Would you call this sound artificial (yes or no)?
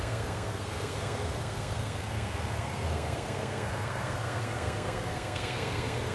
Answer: yes